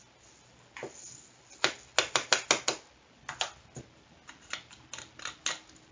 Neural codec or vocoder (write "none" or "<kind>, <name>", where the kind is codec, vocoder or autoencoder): none